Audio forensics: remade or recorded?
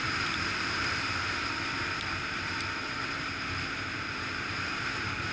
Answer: remade